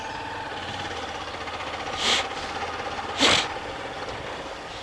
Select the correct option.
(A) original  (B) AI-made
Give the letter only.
A